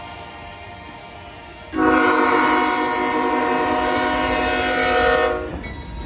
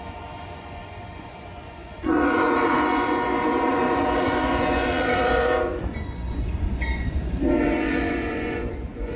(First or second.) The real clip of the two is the first